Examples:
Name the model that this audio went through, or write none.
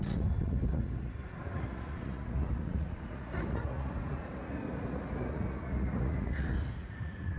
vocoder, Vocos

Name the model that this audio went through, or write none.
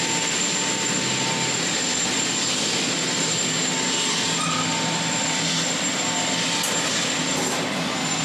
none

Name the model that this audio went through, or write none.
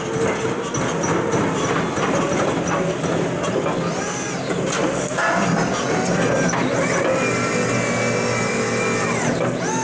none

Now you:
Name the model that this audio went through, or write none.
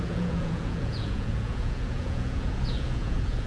vocoder, Vocos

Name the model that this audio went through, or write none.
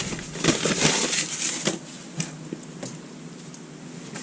none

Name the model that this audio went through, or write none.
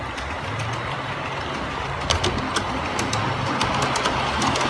none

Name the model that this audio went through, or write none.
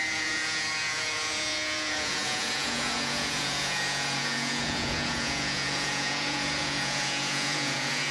vocoder, Vocos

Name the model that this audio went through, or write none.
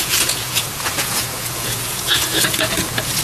vocoder, Vocos